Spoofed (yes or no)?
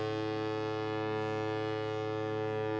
no